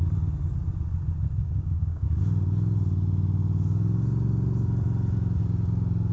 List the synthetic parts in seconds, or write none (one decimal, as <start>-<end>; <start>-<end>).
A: 1.4-2.2